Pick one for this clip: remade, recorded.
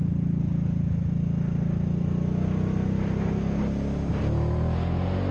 recorded